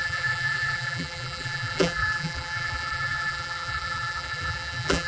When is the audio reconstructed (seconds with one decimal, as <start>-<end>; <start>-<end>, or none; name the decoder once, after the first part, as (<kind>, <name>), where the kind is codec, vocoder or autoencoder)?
0.0-5.1 (vocoder, BigVGAN v2)